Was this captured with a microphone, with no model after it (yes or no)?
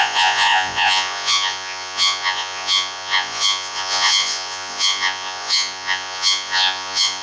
no